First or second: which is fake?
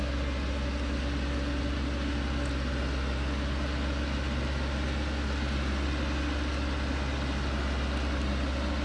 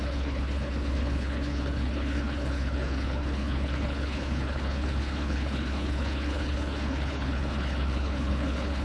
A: second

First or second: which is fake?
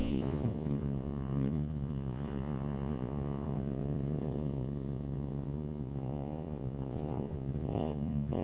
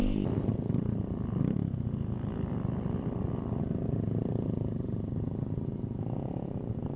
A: first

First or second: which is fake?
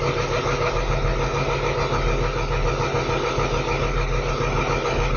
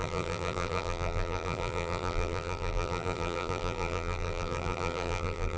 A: second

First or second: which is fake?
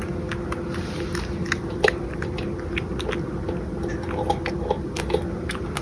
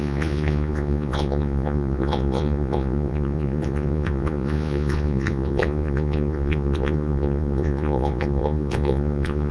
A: second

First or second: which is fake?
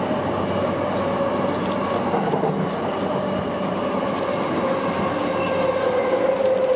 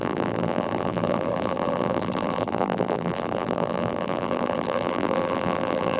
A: second